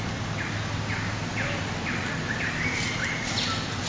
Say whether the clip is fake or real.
real